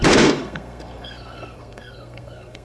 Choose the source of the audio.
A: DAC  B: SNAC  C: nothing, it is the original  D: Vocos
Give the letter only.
B